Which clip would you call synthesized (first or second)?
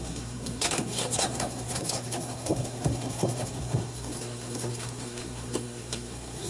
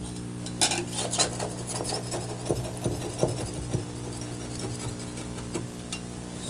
first